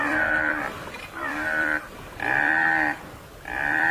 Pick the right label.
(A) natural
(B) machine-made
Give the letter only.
B